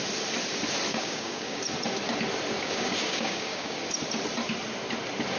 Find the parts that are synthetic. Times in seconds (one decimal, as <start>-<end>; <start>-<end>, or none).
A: 0.9-1.6; 2.6-3.8